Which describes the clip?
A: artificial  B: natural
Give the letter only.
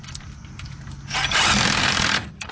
B